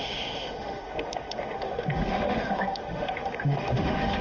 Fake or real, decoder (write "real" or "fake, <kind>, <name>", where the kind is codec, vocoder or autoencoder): fake, autoencoder, DAC-VAE